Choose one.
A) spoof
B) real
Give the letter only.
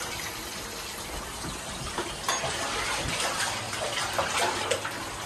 B